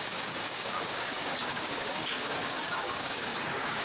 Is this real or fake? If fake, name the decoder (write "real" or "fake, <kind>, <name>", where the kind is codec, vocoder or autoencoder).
fake, codec, DAC